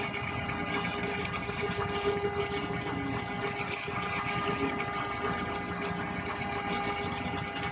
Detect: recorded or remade recorded